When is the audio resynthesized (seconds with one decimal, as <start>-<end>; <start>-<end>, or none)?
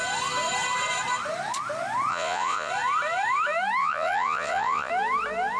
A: 2.1-2.7; 3.8-4.9